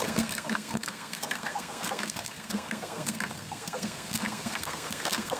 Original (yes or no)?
no